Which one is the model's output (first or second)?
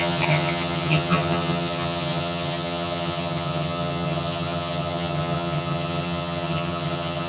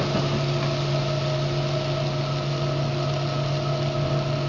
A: first